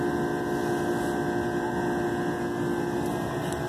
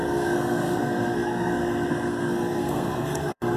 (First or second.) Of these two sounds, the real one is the first